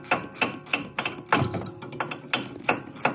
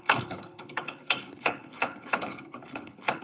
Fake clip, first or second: second